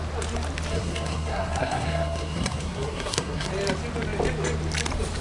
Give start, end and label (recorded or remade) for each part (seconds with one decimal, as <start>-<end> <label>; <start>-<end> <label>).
0.0-0.7 recorded; 0.7-3.5 remade; 3.5-5.2 recorded